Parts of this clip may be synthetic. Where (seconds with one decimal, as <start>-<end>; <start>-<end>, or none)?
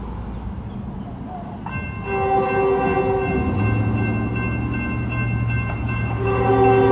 5.8-6.5